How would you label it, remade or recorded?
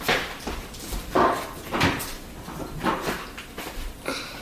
remade